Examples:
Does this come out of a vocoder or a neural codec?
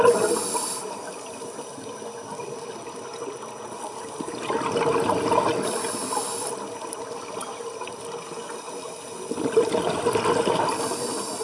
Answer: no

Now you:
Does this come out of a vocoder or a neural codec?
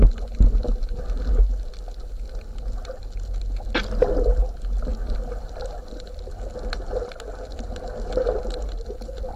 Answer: no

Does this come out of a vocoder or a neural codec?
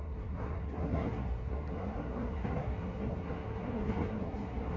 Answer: yes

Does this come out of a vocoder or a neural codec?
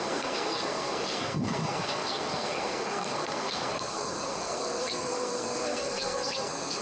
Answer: yes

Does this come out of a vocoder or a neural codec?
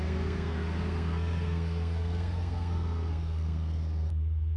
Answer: yes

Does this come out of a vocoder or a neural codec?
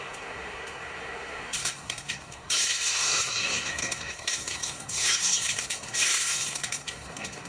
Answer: yes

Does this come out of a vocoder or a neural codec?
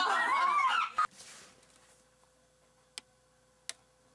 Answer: no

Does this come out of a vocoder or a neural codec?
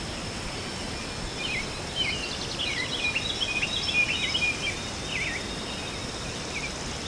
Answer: no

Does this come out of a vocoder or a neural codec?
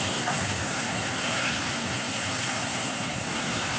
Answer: yes